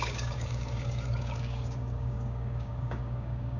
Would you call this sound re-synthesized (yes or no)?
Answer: yes